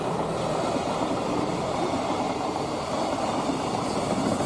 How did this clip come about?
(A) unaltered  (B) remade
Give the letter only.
A